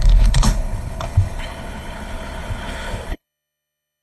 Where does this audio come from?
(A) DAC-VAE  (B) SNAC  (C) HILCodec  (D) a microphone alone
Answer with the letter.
C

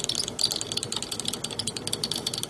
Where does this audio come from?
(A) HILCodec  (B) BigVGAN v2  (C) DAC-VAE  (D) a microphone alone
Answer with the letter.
D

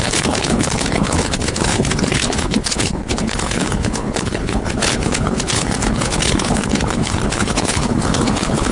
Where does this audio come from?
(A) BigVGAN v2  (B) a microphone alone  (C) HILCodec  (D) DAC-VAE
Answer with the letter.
C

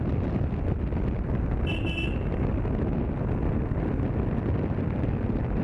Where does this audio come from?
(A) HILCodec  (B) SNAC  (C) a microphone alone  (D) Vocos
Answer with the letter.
C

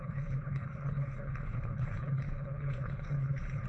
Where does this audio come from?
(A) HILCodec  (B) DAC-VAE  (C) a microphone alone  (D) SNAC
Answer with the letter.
A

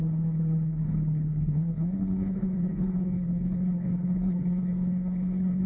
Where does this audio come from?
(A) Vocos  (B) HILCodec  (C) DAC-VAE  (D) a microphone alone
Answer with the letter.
B